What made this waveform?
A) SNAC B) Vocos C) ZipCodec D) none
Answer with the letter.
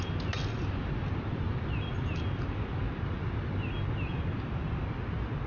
D